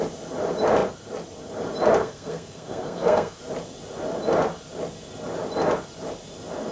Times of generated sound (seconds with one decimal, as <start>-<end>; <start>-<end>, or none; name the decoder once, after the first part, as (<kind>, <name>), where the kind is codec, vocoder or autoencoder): 2.0-3.4 (codec, SNAC)